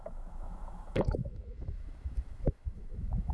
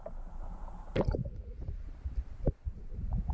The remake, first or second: first